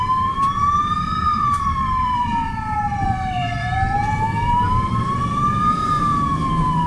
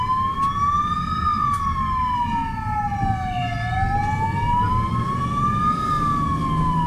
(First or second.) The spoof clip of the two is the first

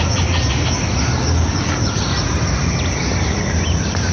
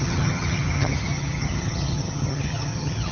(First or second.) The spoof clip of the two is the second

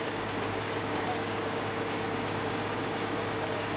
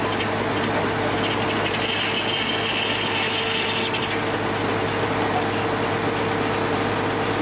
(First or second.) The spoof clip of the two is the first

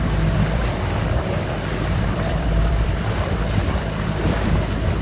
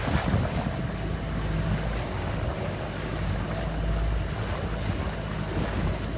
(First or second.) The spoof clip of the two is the first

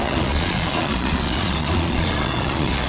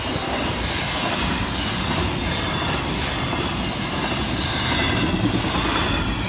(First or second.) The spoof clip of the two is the first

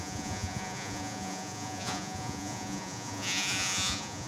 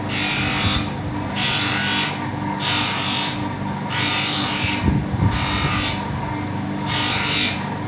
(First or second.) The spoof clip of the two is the first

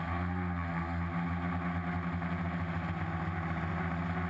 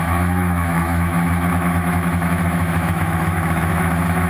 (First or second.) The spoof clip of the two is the second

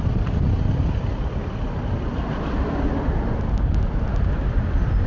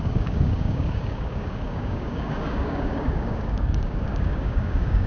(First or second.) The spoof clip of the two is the second